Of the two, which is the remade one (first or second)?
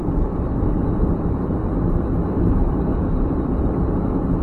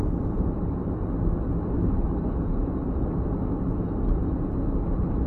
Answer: first